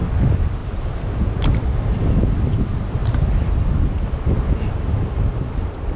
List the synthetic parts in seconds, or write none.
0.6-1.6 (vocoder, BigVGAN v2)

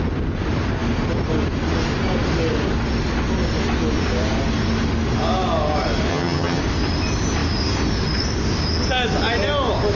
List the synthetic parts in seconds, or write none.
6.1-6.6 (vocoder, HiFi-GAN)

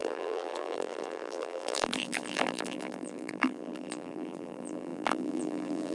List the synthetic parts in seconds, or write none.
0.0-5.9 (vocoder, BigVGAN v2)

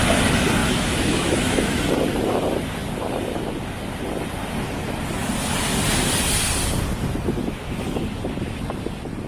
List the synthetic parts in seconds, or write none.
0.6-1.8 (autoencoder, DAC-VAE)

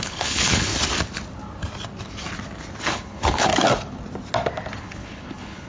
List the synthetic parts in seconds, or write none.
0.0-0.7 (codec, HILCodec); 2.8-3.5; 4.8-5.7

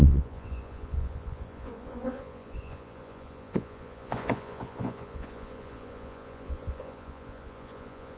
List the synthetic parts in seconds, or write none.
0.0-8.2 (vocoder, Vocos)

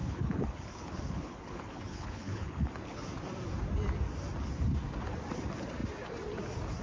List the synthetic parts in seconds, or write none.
0.0-3.0 (codec, HILCodec)

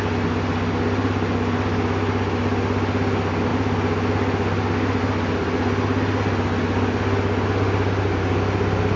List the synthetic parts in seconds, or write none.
none